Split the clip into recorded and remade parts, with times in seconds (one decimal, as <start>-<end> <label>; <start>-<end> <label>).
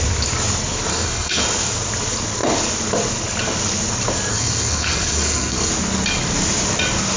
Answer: 0.0-0.9 recorded; 0.9-1.4 remade; 1.4-4.3 recorded; 4.3-5.7 remade; 5.7-7.2 recorded